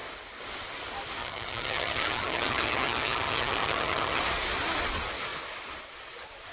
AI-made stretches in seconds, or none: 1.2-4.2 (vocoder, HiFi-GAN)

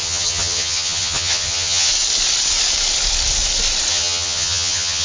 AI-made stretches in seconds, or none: 0.0-1.9 (vocoder, HiFi-GAN); 3.9-5.0

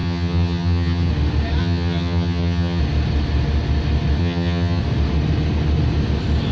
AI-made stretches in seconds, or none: 0.0-1.1 (vocoder, HiFi-GAN); 1.6-2.8; 4.2-4.8

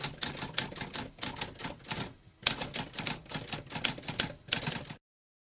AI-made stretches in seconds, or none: none

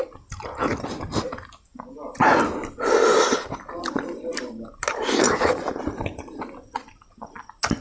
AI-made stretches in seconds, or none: none